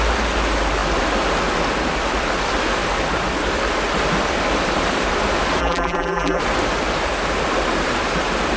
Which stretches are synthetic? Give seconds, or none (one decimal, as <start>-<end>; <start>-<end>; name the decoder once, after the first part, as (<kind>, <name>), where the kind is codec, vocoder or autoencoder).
5.6-6.4 (vocoder, BigVGAN v2)